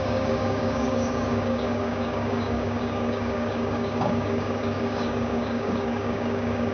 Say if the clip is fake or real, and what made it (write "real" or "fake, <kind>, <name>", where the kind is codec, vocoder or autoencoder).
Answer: fake, codec, DAC